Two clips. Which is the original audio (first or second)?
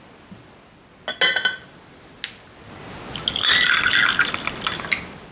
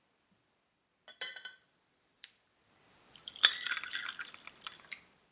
first